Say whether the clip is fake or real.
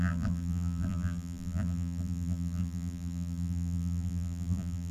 fake